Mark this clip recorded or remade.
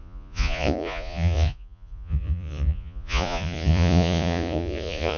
remade